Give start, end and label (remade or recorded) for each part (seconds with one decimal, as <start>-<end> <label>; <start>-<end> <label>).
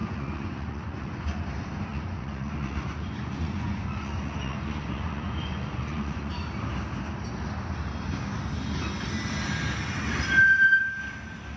0.0-1.4 remade; 1.4-1.9 recorded; 1.9-6.3 remade; 6.3-11.6 recorded